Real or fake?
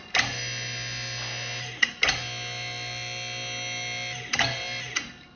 real